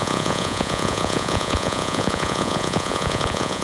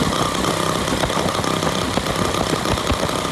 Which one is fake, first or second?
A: first